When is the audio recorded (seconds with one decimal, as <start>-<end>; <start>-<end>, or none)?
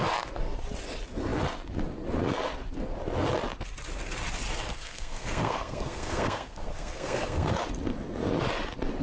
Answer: 0.0-4.7; 7.5-9.0